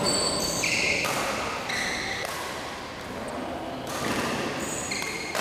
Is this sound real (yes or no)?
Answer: no